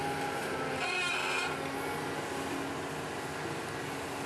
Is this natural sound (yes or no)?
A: yes